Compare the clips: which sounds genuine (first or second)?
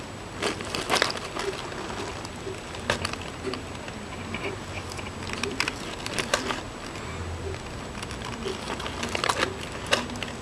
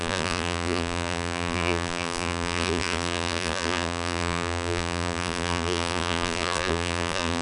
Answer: first